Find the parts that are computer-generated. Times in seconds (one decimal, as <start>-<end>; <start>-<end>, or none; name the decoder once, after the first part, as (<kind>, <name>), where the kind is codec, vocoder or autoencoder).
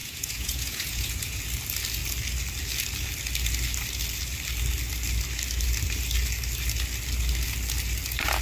0.0-1.4 (vocoder, Vocos)